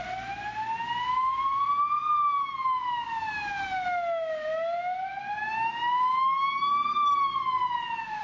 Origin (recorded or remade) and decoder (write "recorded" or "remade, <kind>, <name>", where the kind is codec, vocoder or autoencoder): recorded